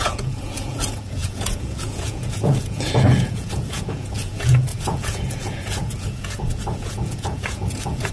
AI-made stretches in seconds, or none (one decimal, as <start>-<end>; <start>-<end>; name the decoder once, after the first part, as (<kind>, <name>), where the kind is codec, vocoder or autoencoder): 0.0-8.1 (vocoder, Vocos)